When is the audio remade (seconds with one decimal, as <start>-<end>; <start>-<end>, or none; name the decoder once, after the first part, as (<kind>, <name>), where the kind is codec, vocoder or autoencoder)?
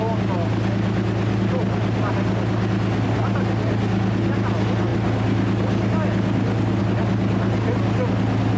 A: none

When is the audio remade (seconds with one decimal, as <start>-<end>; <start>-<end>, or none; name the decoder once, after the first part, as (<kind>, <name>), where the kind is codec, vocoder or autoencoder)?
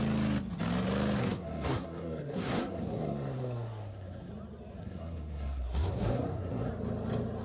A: 1.2-4.3 (codec, SNAC); 4.8-6.7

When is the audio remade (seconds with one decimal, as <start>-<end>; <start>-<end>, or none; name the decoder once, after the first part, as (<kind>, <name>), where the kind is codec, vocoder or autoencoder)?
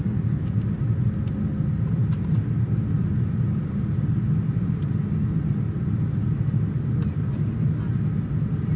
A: 2.0-2.5 (vocoder, BigVGAN v2)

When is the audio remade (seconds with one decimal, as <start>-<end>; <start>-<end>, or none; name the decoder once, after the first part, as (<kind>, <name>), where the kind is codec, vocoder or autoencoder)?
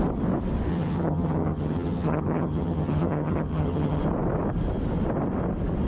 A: 0.7-4.0 (vocoder, HiFi-GAN)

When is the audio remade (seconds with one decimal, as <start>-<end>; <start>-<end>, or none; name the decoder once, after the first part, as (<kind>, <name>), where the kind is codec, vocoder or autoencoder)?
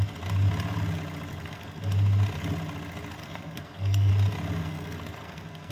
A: 1.3-1.8 (codec, SNAC); 3.2-4.1; 4.6-5.7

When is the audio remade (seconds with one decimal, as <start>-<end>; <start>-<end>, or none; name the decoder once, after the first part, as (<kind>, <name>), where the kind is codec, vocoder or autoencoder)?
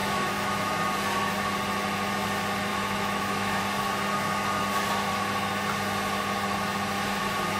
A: 0.0-0.7 (autoencoder, DAC-VAE); 2.7-3.6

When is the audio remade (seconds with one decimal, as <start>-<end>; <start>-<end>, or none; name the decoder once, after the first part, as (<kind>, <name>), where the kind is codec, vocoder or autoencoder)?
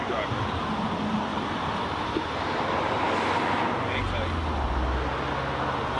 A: 1.3-3.6 (vocoder, BigVGAN v2)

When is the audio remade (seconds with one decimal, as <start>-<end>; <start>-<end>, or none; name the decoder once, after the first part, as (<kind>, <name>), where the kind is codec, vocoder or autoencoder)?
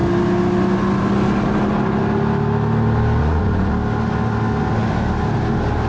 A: 3.2-3.7 (vocoder, Vocos)